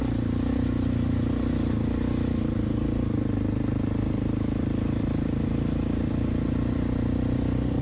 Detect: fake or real real